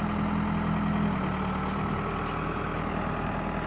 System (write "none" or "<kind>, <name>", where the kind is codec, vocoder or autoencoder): none